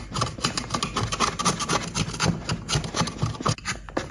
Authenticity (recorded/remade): recorded